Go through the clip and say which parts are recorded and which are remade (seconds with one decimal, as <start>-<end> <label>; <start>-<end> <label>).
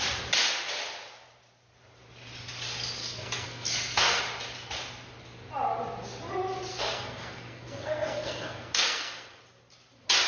0.0-3.0 recorded; 3.0-4.2 remade; 4.2-6.7 recorded; 6.7-9.4 remade; 9.4-10.3 recorded